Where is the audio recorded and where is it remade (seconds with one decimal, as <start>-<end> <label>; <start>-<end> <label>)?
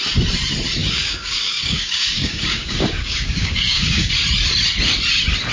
0.0-0.8 recorded; 0.8-4.1 remade; 4.1-5.5 recorded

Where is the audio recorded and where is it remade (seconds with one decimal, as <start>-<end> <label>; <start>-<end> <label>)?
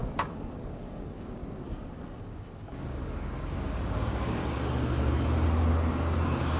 0.0-1.4 remade; 1.4-2.2 recorded; 2.2-4.4 remade; 4.4-5.9 recorded; 5.9-6.6 remade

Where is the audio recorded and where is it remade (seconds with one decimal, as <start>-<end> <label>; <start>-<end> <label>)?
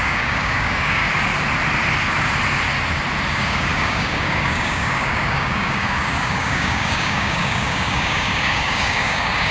0.0-1.0 remade; 1.0-3.3 recorded; 3.3-9.5 remade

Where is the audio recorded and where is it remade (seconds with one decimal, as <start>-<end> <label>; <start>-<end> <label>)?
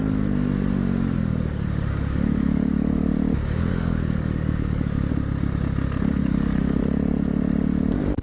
0.0-1.3 recorded; 1.3-3.1 remade; 3.1-3.7 recorded; 3.7-5.1 remade; 5.1-6.2 recorded; 6.2-6.8 remade; 6.8-8.2 recorded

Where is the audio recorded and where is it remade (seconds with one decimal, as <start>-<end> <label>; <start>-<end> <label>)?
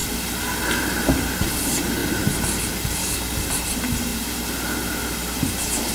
0.0-3.0 recorded; 3.0-3.5 remade; 3.5-5.9 recorded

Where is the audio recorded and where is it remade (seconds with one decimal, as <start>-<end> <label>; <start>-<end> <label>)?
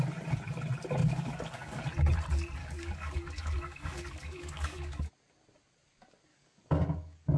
0.0-1.0 recorded; 1.0-1.8 remade; 1.8-2.6 recorded; 2.6-5.1 remade; 5.1-6.3 recorded; 6.3-7.4 remade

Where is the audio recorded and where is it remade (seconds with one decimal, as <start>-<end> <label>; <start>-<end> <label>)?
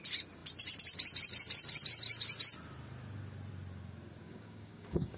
0.0-4.2 recorded; 4.2-5.2 remade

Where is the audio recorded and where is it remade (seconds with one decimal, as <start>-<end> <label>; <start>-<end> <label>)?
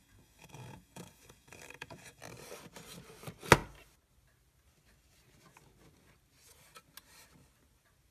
0.0-2.2 remade; 2.2-8.1 recorded